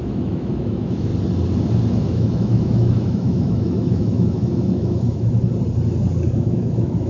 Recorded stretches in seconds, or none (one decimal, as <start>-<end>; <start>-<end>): 1.1-1.9; 5.5-6.3